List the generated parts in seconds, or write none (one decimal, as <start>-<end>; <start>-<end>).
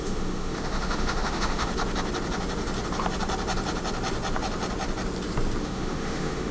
0.0-1.7; 5.6-6.5